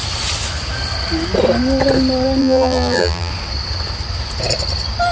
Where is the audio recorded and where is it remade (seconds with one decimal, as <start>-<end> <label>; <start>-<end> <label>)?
0.0-2.4 recorded; 2.4-3.3 remade; 3.3-5.1 recorded